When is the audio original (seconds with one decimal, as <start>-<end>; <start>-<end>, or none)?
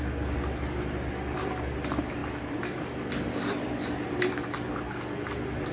0.0-2.2; 4.2-5.7